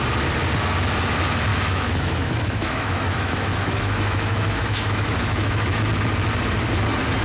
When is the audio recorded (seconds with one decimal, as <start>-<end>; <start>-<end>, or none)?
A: 0.0-1.5; 5.8-7.2